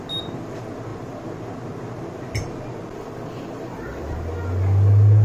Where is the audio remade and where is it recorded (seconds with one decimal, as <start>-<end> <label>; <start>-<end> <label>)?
0.0-5.2 recorded